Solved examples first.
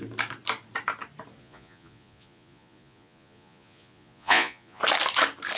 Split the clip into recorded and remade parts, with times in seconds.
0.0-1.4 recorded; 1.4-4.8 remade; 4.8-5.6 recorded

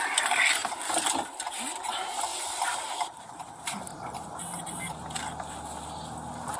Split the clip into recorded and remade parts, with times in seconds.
0.0-2.3 recorded; 2.3-5.0 remade; 5.0-6.6 recorded

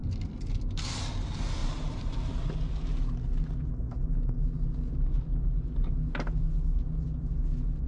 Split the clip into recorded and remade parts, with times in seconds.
0.0-1.6 recorded; 1.6-2.3 remade; 2.3-7.9 recorded